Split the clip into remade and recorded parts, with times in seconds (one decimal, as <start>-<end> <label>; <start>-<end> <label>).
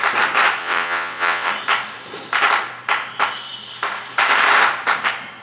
0.0-0.6 recorded; 0.6-1.5 remade; 1.5-5.4 recorded